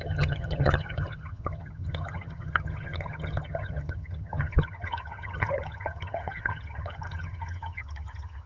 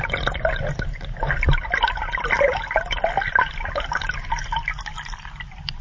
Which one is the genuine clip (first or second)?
second